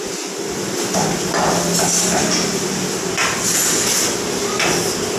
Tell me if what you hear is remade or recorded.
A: recorded